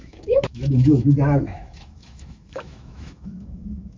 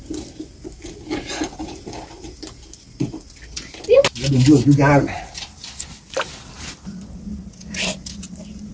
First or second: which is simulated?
first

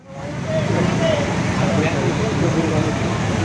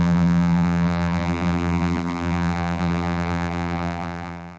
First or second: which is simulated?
second